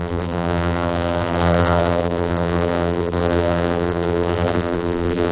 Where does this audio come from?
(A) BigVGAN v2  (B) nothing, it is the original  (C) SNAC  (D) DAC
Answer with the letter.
A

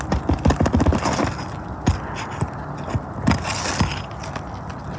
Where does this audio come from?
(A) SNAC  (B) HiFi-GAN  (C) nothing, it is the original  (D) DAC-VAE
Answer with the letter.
C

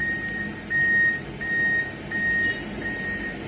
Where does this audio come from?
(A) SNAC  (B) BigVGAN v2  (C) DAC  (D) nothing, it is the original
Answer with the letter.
D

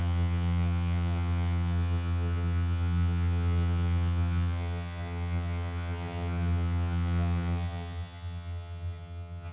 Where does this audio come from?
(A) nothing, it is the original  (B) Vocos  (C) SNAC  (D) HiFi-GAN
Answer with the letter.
D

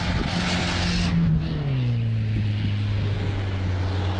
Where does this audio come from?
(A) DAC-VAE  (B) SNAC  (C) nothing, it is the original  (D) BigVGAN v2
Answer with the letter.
C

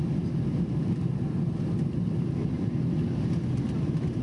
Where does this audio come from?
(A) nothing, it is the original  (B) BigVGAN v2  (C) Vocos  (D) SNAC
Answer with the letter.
A